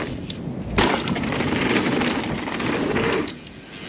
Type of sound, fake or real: real